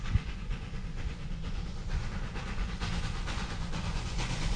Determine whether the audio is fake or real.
fake